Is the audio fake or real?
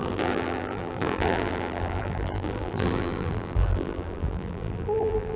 fake